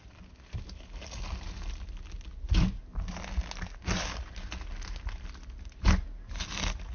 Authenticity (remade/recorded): recorded